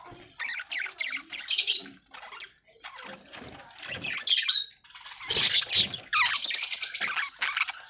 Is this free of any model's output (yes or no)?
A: yes